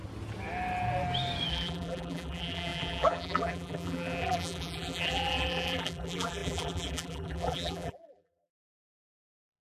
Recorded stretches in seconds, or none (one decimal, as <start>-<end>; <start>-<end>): 0.0-1.5